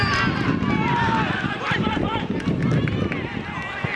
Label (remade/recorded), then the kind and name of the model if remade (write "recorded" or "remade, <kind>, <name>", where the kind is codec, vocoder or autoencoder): recorded